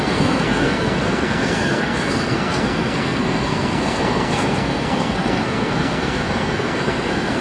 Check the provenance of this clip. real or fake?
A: fake